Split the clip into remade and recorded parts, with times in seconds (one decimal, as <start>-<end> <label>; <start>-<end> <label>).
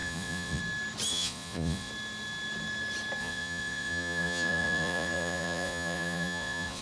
0.0-0.6 remade; 0.6-1.1 recorded; 1.1-1.9 remade; 1.9-3.2 recorded; 3.2-6.8 remade